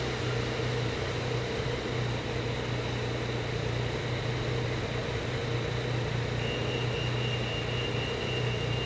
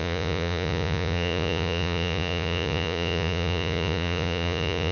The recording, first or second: first